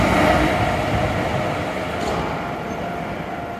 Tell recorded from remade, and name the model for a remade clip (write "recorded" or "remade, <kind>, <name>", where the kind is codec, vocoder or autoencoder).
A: recorded